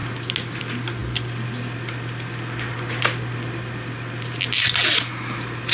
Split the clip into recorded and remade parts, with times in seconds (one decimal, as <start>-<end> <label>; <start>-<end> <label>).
0.0-5.7 recorded